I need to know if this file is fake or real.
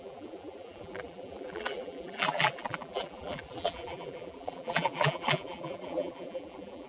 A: fake